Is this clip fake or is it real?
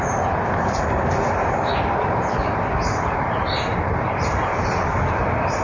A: fake